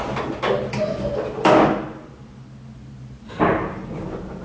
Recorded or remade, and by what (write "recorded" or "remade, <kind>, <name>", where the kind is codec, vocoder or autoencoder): recorded